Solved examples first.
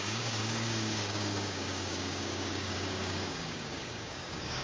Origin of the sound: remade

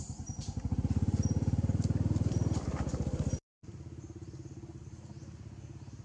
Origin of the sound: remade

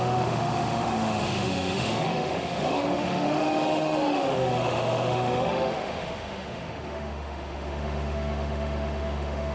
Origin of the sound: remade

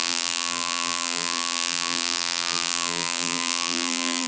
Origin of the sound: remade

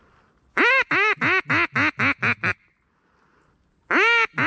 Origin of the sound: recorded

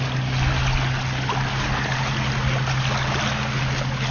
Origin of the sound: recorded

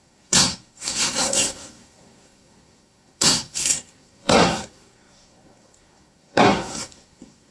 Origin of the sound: remade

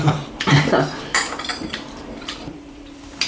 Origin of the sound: remade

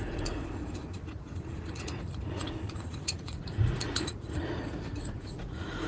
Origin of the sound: remade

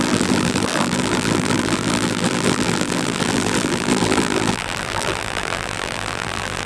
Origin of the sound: remade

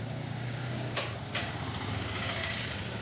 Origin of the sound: remade